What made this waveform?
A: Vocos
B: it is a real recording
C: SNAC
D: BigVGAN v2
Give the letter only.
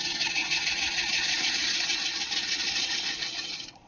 A